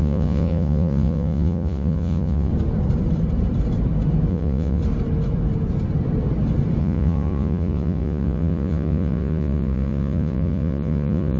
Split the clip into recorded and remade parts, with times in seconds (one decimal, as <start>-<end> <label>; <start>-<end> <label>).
0.0-2.5 remade; 2.5-4.3 recorded; 4.3-4.8 remade; 4.8-6.8 recorded; 6.8-11.4 remade